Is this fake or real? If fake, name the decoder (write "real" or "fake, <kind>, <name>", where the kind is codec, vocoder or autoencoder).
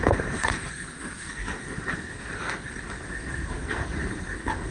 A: fake, codec, SNAC